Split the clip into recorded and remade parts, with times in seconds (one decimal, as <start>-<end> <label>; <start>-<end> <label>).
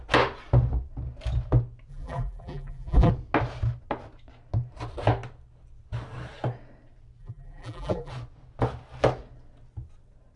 0.0-1.9 recorded; 1.9-3.1 remade; 3.1-7.2 recorded; 7.2-8.1 remade; 8.1-10.4 recorded